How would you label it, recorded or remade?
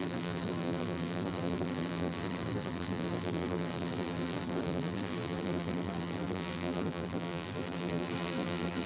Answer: remade